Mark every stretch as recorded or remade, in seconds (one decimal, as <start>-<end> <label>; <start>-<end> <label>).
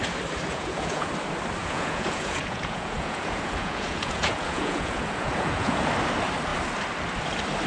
0.0-0.5 recorded; 0.5-1.1 remade; 1.1-1.6 recorded; 1.6-5.9 remade; 5.9-7.7 recorded